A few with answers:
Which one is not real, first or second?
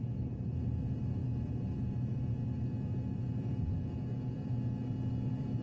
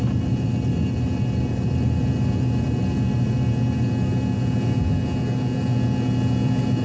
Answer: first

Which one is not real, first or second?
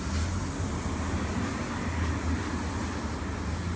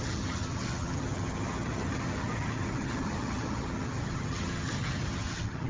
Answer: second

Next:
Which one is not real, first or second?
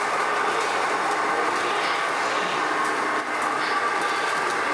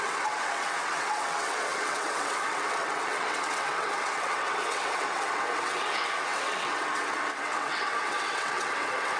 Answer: second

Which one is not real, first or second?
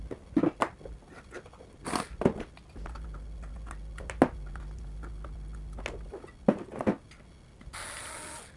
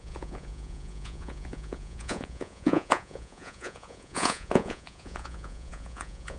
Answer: second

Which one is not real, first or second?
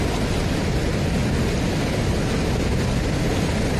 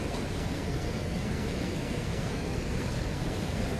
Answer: second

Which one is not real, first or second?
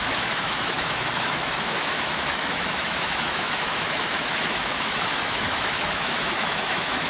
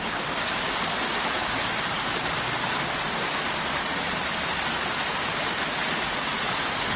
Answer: first